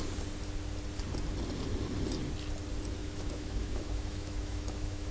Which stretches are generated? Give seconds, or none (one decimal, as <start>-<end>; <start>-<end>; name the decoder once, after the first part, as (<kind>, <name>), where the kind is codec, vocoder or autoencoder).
3.0-5.1 (autoencoder, DAC-VAE)